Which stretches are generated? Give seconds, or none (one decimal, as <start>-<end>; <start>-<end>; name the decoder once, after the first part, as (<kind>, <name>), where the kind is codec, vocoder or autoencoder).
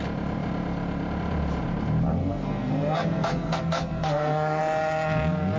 2.2-4.6 (codec, SNAC)